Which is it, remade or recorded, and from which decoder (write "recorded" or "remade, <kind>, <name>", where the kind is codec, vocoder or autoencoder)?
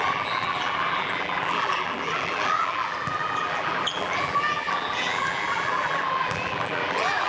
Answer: remade, vocoder, BigVGAN v2